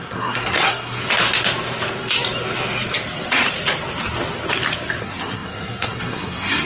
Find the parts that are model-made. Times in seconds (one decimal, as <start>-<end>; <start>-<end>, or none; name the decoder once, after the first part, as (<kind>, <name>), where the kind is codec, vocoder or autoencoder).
0.0-1.0 (codec, SNAC); 5.0-6.7